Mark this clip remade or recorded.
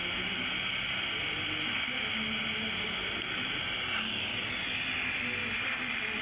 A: recorded